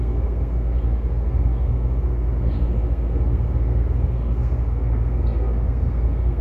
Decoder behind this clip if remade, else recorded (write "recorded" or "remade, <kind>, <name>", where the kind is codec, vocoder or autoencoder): remade, codec, SNAC